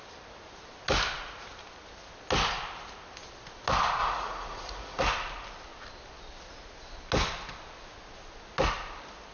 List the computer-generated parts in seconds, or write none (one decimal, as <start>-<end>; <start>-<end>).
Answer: 4.0-5.0